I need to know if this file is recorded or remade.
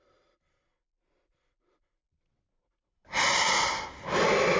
remade